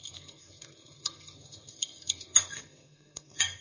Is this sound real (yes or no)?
no